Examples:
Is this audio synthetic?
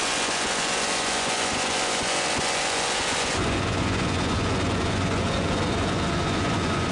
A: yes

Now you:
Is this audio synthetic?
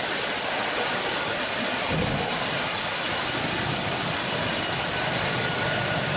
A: no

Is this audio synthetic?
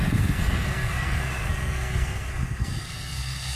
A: yes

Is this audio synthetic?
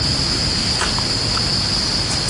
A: no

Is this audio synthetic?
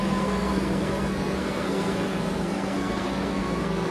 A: yes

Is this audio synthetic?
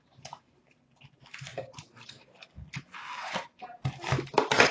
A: no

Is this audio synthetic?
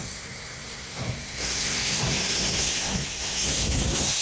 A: yes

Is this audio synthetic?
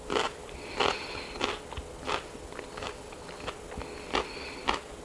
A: no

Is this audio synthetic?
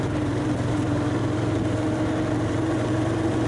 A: yes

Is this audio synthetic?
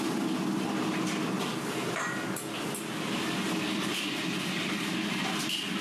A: no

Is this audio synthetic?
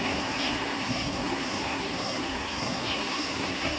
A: yes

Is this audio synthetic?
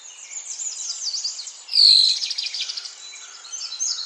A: no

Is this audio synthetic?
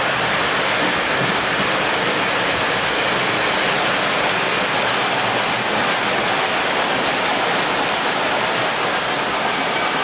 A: no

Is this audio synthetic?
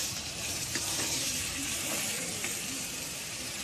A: yes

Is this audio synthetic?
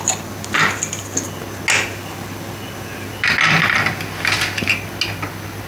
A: no